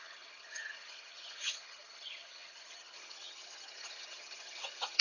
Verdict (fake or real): fake